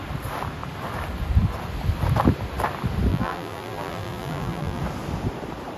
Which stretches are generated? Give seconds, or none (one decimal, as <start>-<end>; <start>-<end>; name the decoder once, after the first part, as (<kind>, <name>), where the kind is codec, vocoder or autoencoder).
3.1-4.8 (vocoder, BigVGAN v2)